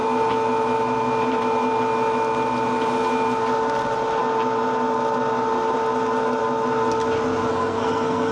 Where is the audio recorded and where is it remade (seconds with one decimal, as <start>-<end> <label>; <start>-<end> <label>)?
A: 0.0-7.5 recorded; 7.5-8.3 remade